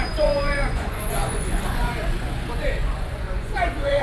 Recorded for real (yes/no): no